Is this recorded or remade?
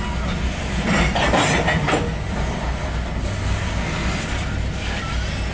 recorded